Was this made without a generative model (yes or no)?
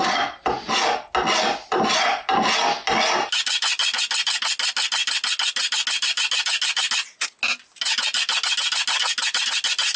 yes